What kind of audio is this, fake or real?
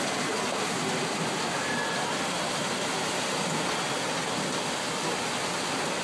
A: real